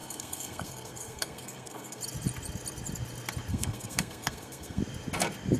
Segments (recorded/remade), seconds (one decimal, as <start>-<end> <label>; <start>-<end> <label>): 0.0-2.0 remade; 2.0-3.5 recorded; 3.5-4.8 remade; 4.8-5.6 recorded